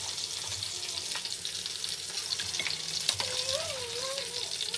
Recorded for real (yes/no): yes